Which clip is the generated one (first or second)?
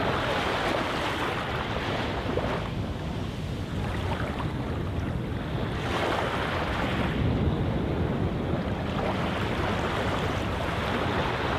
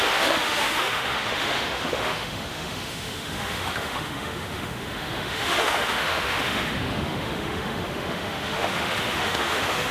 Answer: second